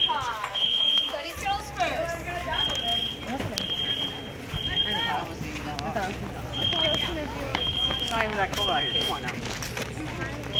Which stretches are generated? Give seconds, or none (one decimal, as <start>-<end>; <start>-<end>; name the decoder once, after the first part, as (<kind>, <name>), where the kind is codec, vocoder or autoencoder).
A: 0.5-1.3 (autoencoder, DAC-VAE); 7.5-9.2